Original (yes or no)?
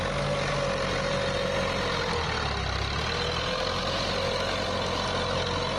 yes